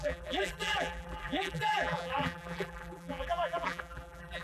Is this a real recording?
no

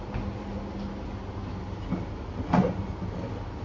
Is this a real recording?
yes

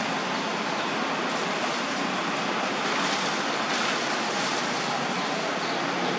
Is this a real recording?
yes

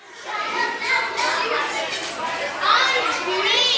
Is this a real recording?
yes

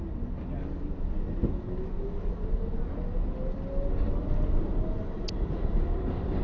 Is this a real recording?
yes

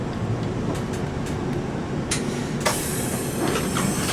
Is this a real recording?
yes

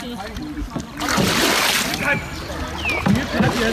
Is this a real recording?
yes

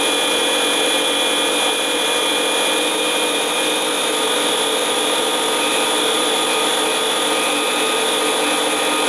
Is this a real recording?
yes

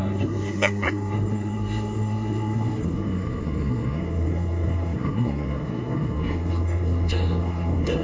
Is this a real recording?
no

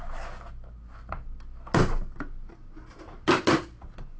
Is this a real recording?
yes